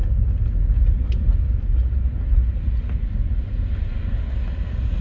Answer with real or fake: real